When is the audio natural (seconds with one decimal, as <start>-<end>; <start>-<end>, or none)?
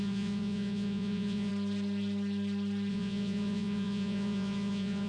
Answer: 1.5-2.9